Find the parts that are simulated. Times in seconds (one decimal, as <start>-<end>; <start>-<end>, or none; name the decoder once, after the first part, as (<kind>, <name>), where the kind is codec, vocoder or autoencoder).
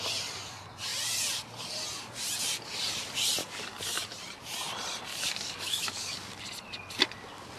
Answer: 3.4-4.0 (codec, DAC); 5.1-6.4